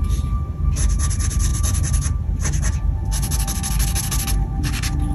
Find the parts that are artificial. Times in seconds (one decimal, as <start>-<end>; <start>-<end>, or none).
none